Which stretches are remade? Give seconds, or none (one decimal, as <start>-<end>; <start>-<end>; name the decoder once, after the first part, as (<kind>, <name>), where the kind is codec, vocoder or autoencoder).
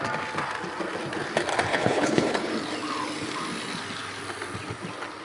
1.7-2.5 (codec, HILCodec)